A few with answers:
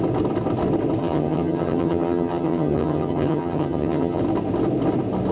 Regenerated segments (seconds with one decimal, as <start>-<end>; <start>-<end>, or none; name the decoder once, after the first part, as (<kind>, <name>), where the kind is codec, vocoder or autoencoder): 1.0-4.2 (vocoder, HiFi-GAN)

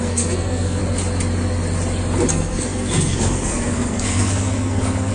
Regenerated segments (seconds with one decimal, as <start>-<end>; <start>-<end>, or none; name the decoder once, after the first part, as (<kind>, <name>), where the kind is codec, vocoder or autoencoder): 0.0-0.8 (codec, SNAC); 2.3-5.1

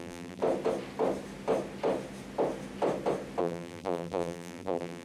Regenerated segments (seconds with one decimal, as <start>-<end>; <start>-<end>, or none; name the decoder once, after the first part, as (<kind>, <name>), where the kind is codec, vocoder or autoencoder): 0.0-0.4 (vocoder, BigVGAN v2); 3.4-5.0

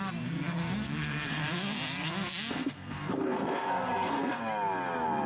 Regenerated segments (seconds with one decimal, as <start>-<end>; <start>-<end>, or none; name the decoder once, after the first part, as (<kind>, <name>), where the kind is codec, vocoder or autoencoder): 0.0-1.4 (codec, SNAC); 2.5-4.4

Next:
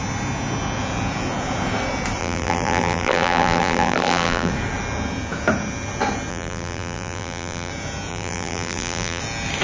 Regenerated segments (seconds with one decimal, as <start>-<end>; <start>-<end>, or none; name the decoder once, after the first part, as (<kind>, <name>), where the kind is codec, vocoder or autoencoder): 2.2-4.5 (vocoder, BigVGAN v2); 6.3-7.7; 8.1-9.2